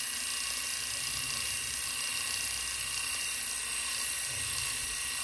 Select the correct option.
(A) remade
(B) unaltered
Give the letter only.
B